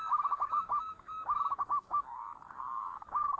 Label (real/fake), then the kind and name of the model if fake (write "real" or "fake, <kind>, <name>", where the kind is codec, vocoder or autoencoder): fake, codec, DAC